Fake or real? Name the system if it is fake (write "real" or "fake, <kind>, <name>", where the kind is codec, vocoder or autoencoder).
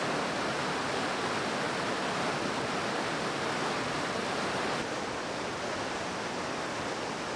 real